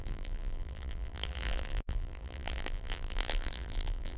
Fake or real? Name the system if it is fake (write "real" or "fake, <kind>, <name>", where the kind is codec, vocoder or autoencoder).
fake, vocoder, BigVGAN v2